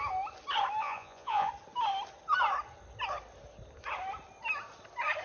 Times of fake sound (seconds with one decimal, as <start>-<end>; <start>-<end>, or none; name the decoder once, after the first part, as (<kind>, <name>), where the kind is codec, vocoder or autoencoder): 0.8-1.5 (vocoder, Vocos)